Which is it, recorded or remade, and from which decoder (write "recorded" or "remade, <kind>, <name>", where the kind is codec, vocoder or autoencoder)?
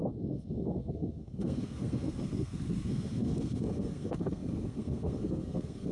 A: remade, codec, SNAC